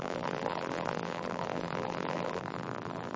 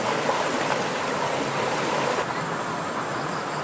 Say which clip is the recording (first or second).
second